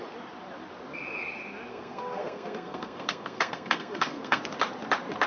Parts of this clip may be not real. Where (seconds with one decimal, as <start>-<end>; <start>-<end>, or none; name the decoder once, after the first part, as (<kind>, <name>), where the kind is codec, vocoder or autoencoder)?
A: 1.7-4.4 (codec, SNAC)